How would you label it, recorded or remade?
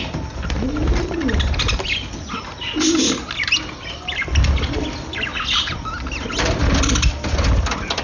recorded